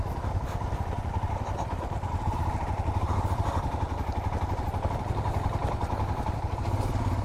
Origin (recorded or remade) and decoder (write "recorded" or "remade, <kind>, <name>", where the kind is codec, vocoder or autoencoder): remade, vocoder, BigVGAN v2